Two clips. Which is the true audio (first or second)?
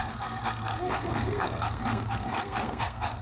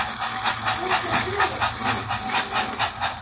second